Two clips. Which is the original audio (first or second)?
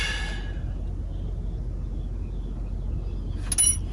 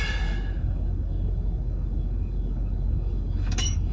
first